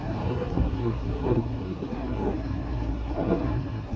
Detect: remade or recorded remade